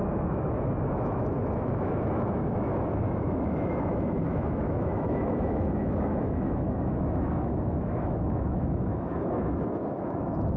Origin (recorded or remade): remade